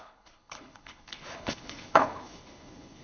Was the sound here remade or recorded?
remade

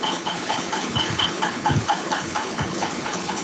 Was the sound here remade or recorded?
remade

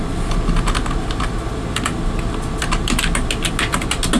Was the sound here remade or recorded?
recorded